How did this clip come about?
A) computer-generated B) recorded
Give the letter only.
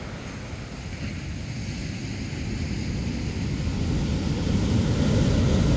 B